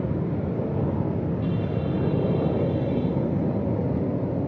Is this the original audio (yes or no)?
no